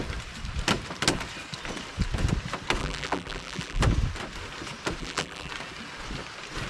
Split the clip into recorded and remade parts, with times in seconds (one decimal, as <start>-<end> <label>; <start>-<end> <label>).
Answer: 0.0-2.8 recorded; 2.8-3.8 remade; 3.8-5.0 recorded; 5.0-5.5 remade; 5.5-6.7 recorded